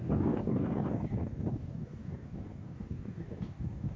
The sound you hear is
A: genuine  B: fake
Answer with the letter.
B